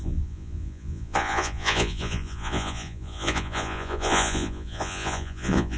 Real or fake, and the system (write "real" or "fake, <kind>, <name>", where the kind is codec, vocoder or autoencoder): fake, vocoder, Vocos